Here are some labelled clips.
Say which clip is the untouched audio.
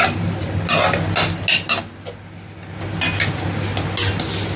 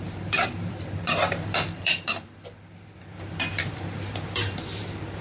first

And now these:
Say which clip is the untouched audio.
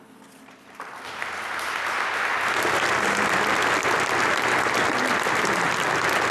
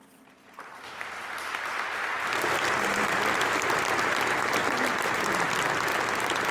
first